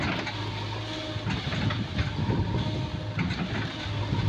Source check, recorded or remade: recorded